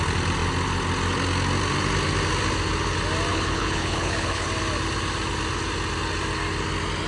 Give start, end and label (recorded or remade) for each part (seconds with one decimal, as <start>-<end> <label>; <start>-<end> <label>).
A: 0.0-3.3 recorded; 3.3-4.5 remade; 4.5-7.1 recorded